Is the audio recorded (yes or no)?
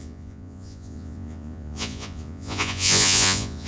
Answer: no